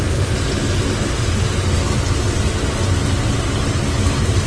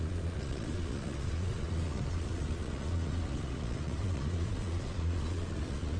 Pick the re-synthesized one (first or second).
second